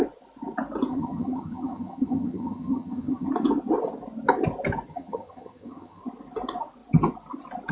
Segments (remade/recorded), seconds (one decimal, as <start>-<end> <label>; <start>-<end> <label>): 0.0-0.9 recorded; 0.9-3.3 remade; 3.3-4.9 recorded; 4.9-6.0 remade; 6.0-7.7 recorded